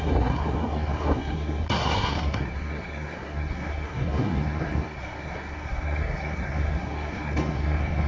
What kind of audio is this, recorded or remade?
remade